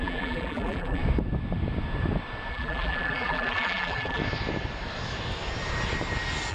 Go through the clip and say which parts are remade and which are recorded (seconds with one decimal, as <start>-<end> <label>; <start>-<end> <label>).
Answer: 0.0-1.0 remade; 1.0-2.5 recorded; 2.5-4.2 remade; 4.2-6.5 recorded